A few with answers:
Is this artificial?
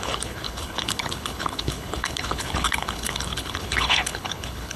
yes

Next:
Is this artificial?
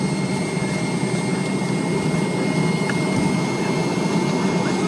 no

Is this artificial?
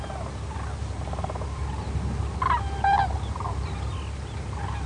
no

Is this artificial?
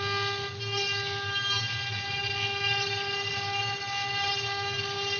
no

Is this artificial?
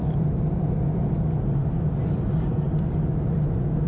no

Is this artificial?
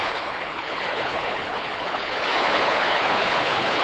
yes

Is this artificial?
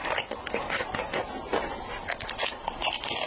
no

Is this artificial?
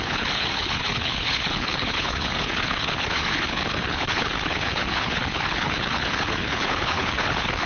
yes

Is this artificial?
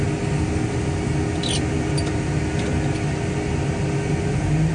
no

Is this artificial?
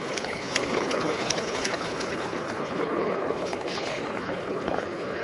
yes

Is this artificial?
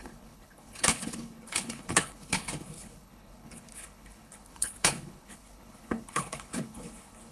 yes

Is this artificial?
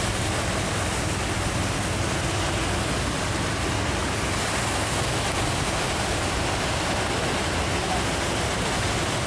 no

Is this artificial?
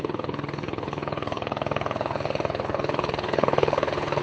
yes